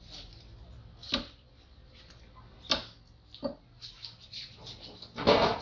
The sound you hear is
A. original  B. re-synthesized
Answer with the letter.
A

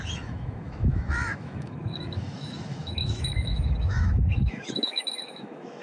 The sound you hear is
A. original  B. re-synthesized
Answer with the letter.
B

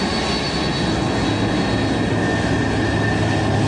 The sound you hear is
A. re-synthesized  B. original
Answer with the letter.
B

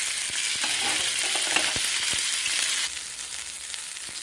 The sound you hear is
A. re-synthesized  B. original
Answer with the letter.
B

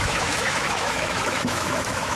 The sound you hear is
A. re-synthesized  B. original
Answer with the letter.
A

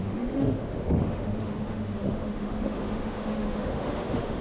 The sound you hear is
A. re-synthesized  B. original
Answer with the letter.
A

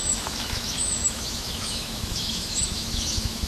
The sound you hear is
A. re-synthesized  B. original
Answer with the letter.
A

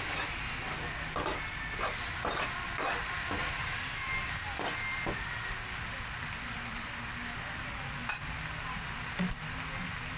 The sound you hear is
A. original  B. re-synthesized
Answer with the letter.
A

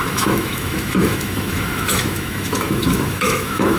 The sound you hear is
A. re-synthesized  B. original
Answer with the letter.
A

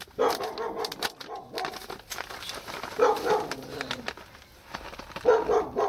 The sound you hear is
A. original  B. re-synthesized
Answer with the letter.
A